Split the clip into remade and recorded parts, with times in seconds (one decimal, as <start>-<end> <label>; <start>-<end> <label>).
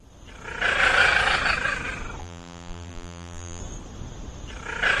0.0-2.2 recorded; 2.2-3.6 remade; 3.6-5.0 recorded